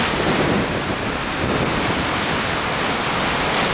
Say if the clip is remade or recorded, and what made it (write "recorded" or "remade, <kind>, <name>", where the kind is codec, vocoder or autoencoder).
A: recorded